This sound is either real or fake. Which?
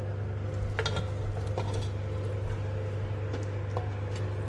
real